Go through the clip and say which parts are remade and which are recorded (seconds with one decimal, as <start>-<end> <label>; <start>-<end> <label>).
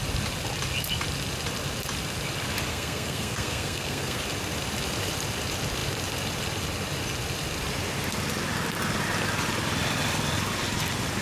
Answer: 0.0-2.7 recorded; 2.7-4.2 remade; 4.2-11.2 recorded